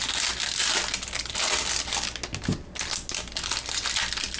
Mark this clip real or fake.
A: real